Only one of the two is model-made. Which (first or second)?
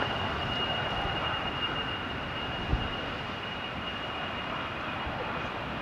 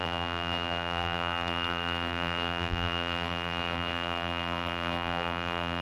second